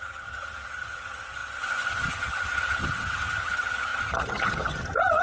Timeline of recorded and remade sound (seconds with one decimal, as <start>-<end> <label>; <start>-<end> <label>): 0.0-5.2 remade